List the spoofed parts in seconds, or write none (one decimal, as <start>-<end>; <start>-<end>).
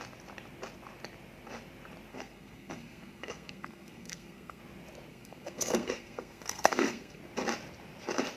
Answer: 2.1-4.6; 5.1-7.2